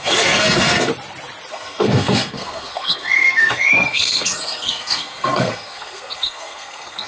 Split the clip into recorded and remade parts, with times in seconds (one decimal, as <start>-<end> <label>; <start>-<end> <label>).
0.0-0.9 remade; 0.9-1.5 recorded; 1.5-7.1 remade